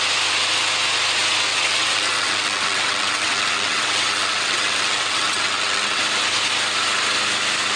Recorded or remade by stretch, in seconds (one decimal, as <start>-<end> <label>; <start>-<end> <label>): 0.0-1.5 recorded; 1.5-6.0 remade; 6.0-7.8 recorded